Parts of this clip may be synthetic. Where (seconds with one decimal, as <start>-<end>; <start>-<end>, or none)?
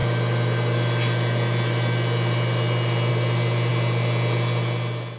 none